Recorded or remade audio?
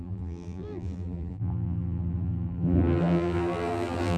remade